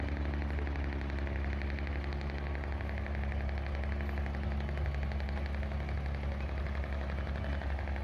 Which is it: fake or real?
real